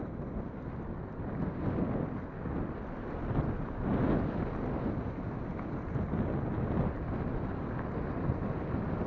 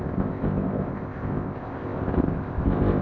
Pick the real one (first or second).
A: first